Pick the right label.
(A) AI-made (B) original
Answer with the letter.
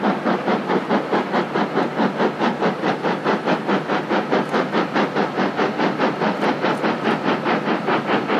B